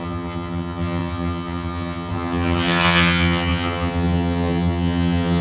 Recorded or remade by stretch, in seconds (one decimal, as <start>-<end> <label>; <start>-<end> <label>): 0.0-5.4 remade